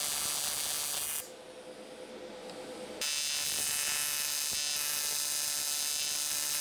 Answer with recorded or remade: recorded